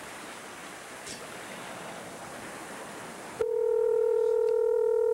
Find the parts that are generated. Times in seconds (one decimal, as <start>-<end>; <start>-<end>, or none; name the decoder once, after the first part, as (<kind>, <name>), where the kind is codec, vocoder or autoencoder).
0.0-5.1 (vocoder, BigVGAN v2)